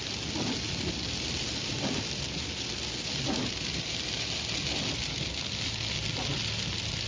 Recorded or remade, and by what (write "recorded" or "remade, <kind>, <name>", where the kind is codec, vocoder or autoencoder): recorded